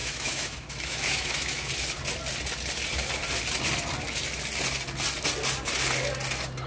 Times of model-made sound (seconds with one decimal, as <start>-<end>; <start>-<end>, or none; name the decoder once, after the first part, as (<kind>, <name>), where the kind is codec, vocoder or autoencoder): 0.0-1.7 (autoencoder, DAC-VAE)